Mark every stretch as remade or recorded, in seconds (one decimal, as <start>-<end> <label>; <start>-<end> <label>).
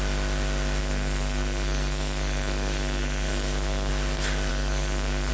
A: 0.0-0.8 recorded; 0.8-3.9 remade; 3.9-4.5 recorded; 4.5-5.3 remade